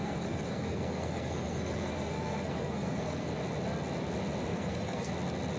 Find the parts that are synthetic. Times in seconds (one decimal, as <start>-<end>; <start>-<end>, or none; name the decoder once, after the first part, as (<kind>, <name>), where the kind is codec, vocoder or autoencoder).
0.0-3.3 (codec, SNAC); 4.5-5.1